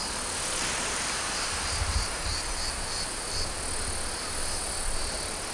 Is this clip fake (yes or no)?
no